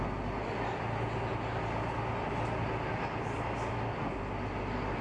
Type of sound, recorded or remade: recorded